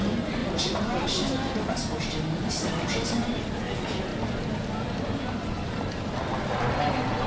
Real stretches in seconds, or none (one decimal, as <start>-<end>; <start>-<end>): 0.0-0.4; 3.6-4.1; 6.7-7.3